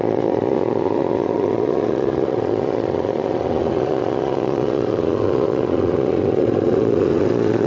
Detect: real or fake fake